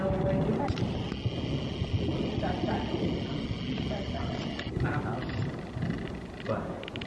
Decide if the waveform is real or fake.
real